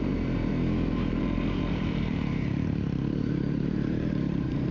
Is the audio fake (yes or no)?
yes